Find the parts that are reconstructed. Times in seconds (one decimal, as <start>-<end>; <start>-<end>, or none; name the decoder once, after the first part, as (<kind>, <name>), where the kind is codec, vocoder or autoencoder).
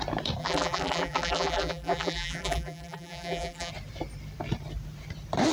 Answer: 0.4-3.7 (vocoder, BigVGAN v2)